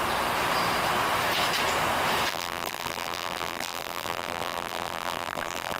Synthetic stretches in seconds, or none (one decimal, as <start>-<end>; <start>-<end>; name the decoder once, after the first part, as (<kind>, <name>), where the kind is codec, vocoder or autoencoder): 2.3-5.8 (vocoder, BigVGAN v2)